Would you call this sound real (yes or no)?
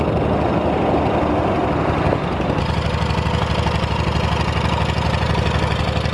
yes